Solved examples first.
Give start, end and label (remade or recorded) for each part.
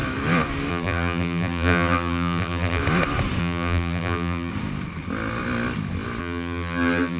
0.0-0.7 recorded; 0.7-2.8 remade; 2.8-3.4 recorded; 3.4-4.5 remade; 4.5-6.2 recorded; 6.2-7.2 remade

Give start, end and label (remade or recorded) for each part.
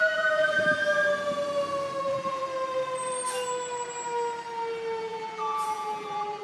0.0-0.8 remade; 0.8-2.0 recorded; 2.0-2.4 remade; 2.4-5.0 recorded; 5.0-6.4 remade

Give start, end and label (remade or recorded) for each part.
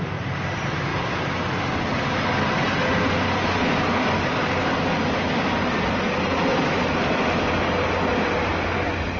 0.0-9.2 recorded